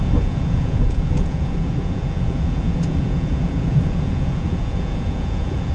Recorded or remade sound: remade